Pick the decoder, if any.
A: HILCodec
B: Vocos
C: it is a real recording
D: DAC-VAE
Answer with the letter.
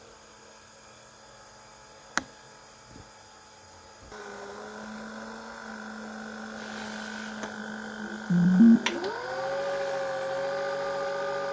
C